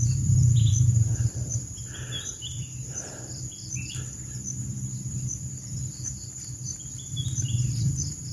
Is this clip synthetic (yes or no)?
yes